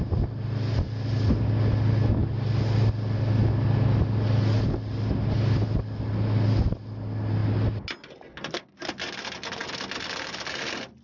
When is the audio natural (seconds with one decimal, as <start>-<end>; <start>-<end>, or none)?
0.0-11.0